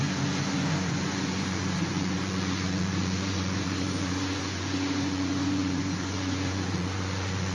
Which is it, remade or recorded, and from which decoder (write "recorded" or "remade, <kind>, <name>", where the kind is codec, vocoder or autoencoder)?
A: remade, vocoder, Vocos